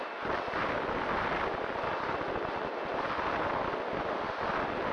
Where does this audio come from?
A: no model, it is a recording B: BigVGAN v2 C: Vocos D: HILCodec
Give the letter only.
A